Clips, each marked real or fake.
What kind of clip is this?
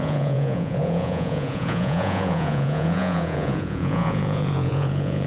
fake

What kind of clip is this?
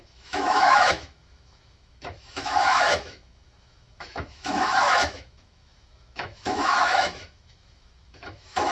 fake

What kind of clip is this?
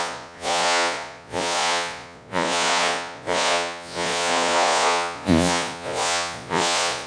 fake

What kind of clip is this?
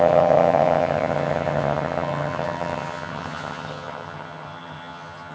fake